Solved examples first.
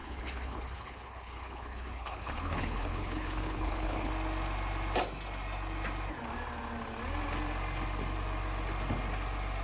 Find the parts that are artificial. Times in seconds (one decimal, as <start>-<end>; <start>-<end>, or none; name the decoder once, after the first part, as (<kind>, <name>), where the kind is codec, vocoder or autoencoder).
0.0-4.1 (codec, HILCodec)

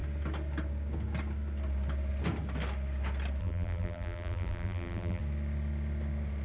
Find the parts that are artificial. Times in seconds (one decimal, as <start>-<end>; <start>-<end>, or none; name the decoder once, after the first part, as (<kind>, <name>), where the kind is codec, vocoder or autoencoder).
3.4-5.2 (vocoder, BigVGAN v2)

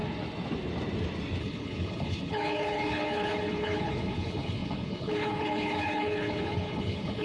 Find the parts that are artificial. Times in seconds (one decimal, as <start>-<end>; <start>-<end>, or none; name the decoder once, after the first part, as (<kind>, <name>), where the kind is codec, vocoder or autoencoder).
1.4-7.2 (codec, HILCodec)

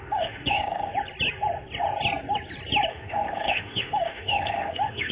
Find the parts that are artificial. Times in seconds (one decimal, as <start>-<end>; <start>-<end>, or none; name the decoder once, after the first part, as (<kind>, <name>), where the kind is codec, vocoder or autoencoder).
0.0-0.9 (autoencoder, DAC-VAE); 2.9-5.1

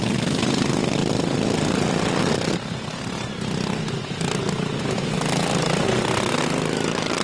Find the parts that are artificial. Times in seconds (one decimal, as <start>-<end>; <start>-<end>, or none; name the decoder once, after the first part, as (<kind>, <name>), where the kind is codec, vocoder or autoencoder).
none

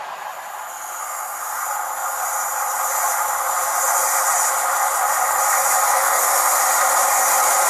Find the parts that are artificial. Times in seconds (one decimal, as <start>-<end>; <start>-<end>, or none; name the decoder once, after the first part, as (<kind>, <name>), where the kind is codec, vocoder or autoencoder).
0.7-1.6 (codec, SNAC); 5.9-6.6

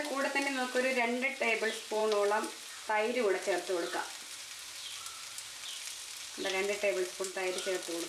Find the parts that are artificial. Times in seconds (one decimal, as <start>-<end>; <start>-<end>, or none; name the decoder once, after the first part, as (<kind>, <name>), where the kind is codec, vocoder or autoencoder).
none

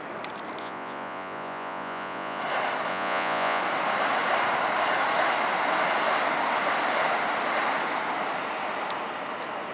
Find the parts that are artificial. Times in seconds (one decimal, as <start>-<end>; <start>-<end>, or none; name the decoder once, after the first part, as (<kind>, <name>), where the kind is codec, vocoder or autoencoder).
0.6-2.4 (vocoder, Vocos); 2.9-3.6